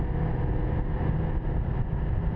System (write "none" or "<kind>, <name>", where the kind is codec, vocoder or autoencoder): none